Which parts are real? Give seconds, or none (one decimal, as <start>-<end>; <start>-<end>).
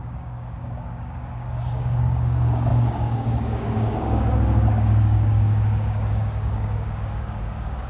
none